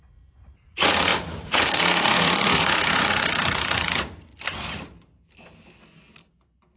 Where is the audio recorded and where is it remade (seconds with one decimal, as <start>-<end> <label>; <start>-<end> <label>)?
0.0-4.3 remade; 4.3-6.8 recorded